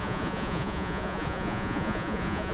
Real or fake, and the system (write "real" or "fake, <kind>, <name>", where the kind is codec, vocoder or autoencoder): fake, vocoder, Vocos